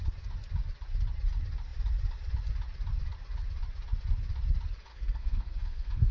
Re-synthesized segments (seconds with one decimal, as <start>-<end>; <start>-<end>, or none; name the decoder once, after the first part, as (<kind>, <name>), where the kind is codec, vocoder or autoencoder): 4.9-6.1 (codec, SNAC)